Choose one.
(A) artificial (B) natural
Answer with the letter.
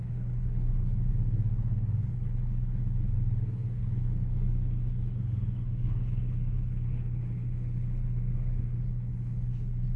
A